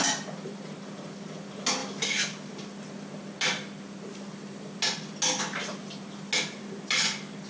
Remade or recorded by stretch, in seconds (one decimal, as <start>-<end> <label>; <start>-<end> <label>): 0.0-7.5 recorded